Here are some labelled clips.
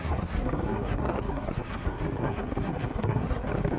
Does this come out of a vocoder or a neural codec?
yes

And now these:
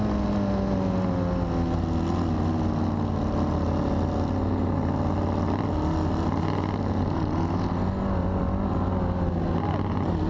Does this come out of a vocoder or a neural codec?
no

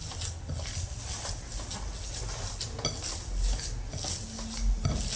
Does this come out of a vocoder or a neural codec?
no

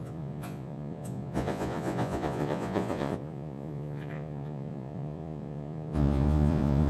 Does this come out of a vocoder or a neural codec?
yes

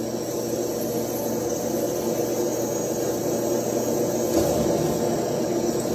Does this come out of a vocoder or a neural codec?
no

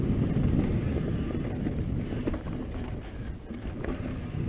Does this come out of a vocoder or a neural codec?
no